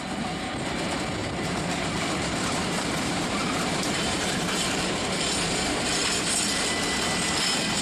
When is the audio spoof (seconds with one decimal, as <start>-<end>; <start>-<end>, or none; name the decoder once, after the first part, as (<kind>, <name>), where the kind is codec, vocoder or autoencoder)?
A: 1.2-5.2 (vocoder, BigVGAN v2)